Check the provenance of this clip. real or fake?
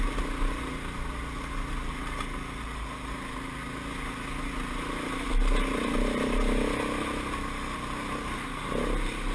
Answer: real